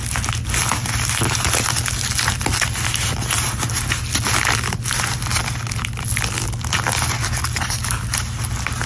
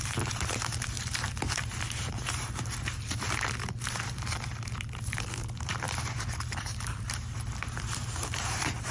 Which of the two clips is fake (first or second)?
second